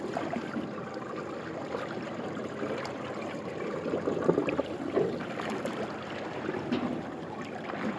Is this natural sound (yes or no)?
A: yes